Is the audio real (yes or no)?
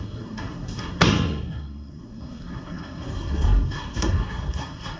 no